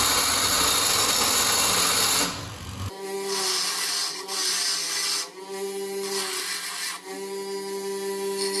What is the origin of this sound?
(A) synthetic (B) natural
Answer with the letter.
B